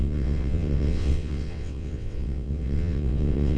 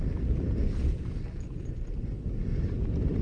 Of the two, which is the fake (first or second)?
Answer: first